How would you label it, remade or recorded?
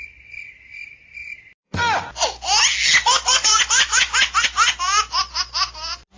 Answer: recorded